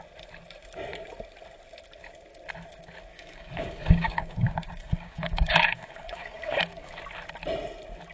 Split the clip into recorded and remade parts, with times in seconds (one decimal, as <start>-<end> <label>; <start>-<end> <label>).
0.0-3.1 recorded; 3.1-6.9 remade; 6.9-8.1 recorded